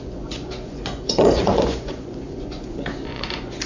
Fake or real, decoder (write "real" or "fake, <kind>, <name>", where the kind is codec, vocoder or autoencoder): fake, vocoder, Vocos